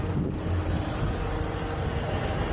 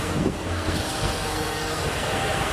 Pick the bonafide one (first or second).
first